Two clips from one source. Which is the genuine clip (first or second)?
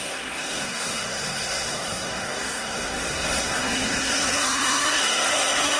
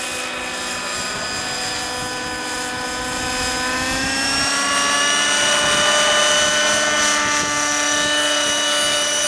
second